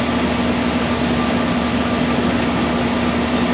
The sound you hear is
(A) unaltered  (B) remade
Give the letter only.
A